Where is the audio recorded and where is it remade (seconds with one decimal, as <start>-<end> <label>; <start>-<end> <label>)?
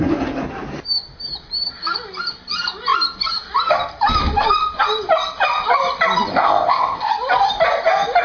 0.0-6.3 recorded; 6.3-7.1 remade; 7.1-8.2 recorded